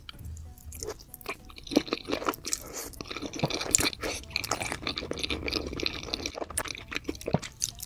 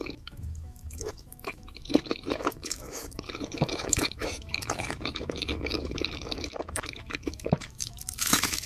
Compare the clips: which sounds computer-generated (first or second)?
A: second